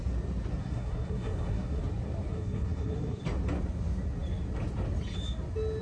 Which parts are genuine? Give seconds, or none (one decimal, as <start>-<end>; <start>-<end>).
0.0-0.6; 1.8-2.3; 3.2-5.8